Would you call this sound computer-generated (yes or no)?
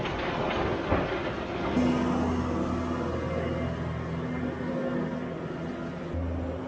no